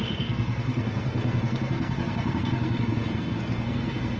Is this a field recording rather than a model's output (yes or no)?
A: no